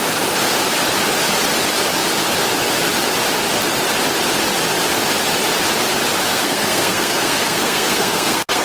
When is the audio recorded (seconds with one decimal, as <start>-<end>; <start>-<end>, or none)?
0.0-6.3